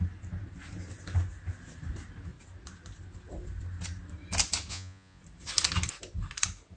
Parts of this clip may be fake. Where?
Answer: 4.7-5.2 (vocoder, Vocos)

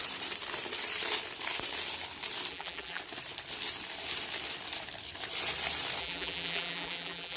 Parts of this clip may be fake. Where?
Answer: 2.5-3.0 (vocoder, BigVGAN v2); 6.0-7.4

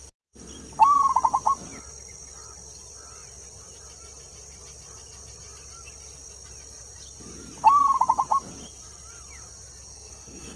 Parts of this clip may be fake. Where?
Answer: 9.9-10.6 (codec, SNAC)

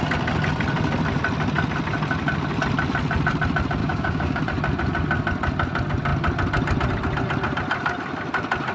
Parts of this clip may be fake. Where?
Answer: 3.8-4.4 (codec, DAC)

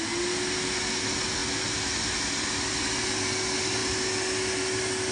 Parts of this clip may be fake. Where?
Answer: none

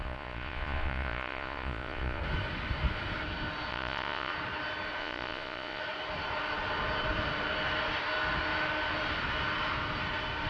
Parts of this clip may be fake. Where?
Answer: 0.0-2.2 (vocoder, Vocos); 3.7-4.3; 5.0-5.8